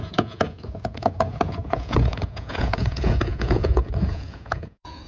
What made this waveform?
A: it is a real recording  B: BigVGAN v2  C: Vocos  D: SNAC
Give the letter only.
C